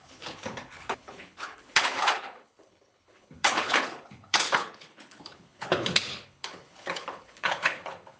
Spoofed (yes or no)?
yes